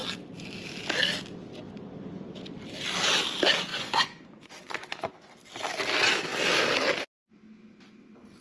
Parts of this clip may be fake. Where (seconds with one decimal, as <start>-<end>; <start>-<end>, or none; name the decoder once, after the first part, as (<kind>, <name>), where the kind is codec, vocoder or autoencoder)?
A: 3.7-5.1 (vocoder, Vocos)